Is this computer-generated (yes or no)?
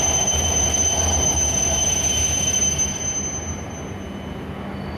no